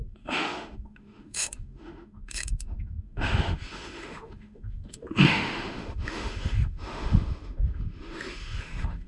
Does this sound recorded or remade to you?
remade